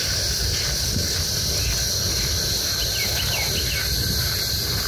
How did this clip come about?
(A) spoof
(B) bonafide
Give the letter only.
B